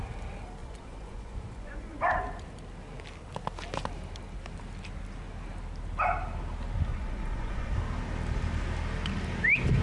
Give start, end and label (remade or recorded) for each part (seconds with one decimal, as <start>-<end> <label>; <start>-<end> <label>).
0.0-0.6 recorded; 0.6-2.0 remade; 2.0-6.9 recorded; 6.9-7.7 remade; 7.7-9.8 recorded